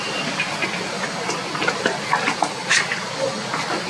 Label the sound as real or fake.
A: real